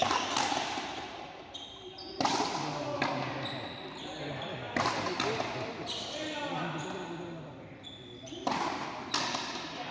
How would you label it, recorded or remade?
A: recorded